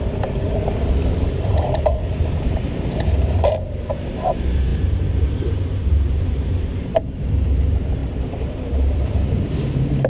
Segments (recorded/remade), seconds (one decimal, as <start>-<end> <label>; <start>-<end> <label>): 0.0-10.1 remade